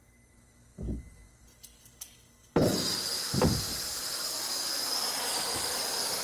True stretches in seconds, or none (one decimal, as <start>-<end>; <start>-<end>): 0.0-6.2